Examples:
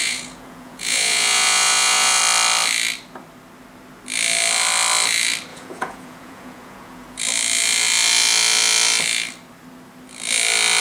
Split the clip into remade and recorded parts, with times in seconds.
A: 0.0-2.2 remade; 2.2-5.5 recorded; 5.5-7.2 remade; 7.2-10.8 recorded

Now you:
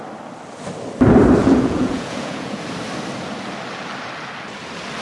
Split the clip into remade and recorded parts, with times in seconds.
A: 0.0-1.4 recorded; 1.4-2.6 remade; 2.6-5.0 recorded

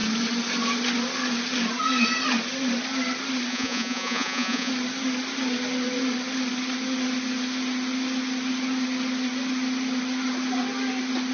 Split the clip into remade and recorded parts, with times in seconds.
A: 0.0-3.5 recorded; 3.5-4.7 remade; 4.7-11.3 recorded

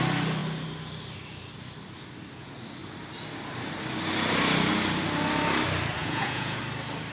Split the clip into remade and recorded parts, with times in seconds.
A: 0.0-6.0 recorded; 6.0-6.6 remade; 6.6-7.1 recorded

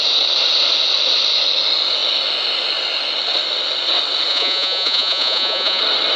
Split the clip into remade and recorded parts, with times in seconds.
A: 0.0-4.3 recorded; 4.3-5.8 remade; 5.8-6.2 recorded

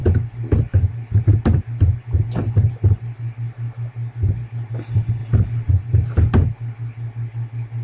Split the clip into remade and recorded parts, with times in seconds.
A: 0.0-7.8 recorded

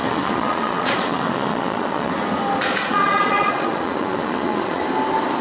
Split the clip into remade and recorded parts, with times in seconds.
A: 0.0-2.1 remade; 2.1-2.7 recorded; 2.7-4.8 remade; 4.8-5.4 recorded

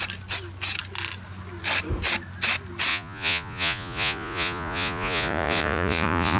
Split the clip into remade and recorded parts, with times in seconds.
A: 0.0-2.9 recorded; 2.9-6.4 remade